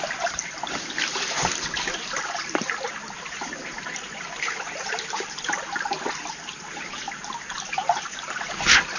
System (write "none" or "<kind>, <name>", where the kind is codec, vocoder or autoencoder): vocoder, BigVGAN v2